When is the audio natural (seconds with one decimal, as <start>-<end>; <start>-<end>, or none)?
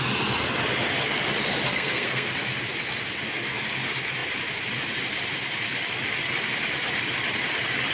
0.0-1.7; 2.3-7.9